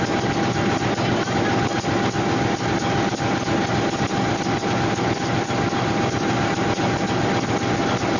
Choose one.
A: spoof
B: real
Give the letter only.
B